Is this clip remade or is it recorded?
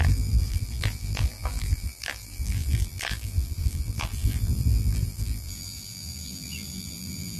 remade